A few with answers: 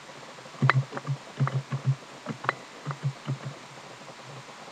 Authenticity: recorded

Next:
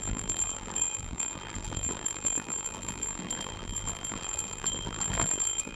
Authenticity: remade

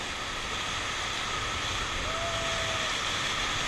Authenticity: recorded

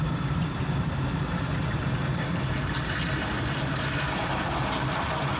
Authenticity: remade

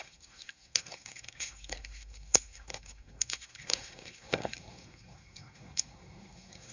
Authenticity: remade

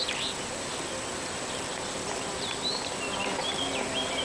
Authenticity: recorded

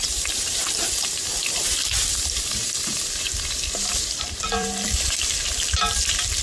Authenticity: remade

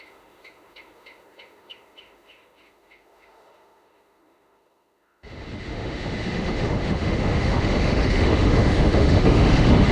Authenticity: remade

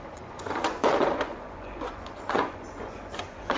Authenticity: remade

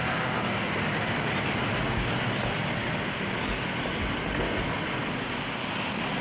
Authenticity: recorded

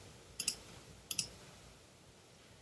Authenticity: recorded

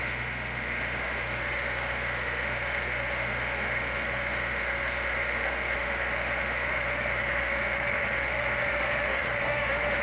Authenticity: remade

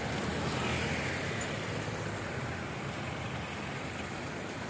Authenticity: recorded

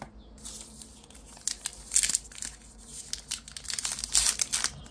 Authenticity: recorded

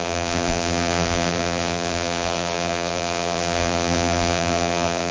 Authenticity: remade